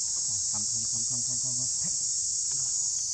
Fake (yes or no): no